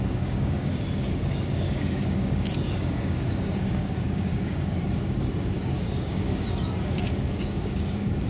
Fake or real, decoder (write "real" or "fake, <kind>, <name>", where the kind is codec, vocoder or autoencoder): fake, codec, DAC